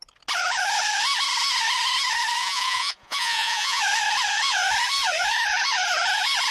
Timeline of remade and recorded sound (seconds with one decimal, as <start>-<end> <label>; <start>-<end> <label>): 0.0-2.4 recorded; 2.4-3.8 remade; 3.8-6.5 recorded